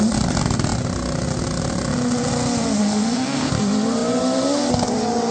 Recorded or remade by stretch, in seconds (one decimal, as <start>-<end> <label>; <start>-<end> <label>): 0.0-2.8 recorded; 2.8-3.5 remade; 3.5-5.3 recorded